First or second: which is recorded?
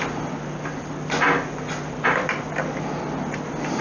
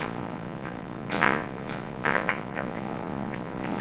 first